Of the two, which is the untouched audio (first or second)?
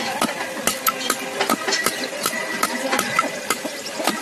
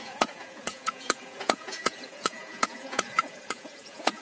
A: first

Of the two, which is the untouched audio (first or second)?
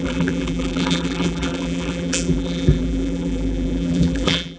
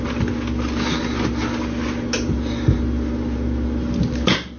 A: second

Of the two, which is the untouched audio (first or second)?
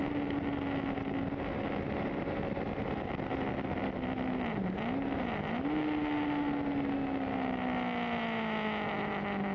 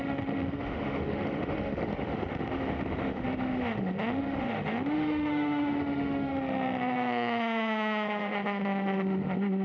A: first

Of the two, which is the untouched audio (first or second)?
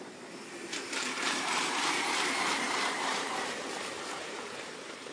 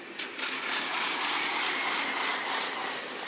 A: second